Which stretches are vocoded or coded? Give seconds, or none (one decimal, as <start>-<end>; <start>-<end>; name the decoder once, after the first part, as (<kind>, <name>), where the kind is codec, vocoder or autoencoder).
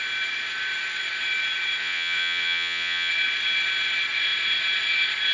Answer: 1.8-3.1 (vocoder, Vocos)